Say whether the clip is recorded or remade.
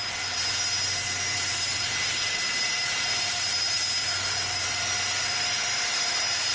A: recorded